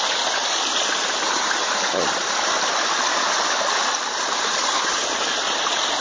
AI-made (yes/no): yes